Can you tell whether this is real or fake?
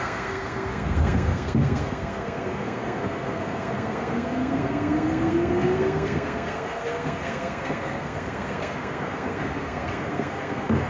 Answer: fake